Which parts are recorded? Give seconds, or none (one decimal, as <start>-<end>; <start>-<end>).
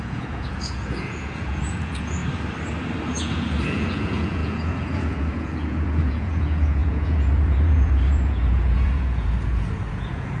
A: 2.2-3.2